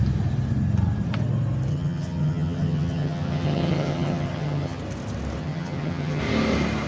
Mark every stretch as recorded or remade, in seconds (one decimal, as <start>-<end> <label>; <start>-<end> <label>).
0.0-1.7 recorded; 1.7-4.8 remade; 4.8-5.4 recorded; 5.4-6.2 remade; 6.2-6.9 recorded